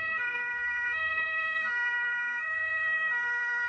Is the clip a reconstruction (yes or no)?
yes